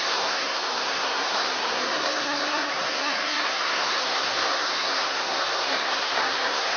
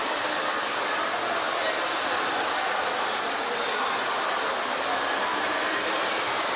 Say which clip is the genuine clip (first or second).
second